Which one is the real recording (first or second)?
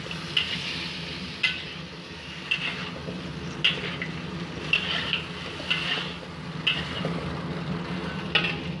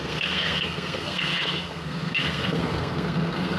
first